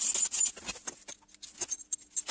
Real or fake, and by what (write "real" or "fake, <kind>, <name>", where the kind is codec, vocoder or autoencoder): real